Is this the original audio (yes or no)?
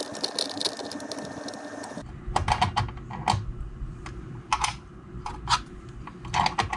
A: yes